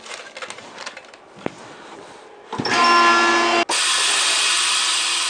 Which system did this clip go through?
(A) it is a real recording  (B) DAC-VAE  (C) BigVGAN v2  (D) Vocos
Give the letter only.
A